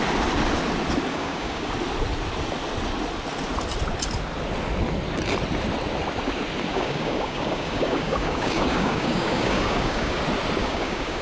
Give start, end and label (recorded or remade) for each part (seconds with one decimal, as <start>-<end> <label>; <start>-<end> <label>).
0.0-1.1 recorded; 1.1-1.7 remade; 1.7-6.7 recorded; 6.7-10.2 remade; 10.2-10.6 recorded; 10.6-11.2 remade